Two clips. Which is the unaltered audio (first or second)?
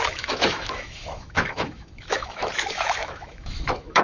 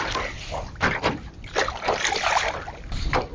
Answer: second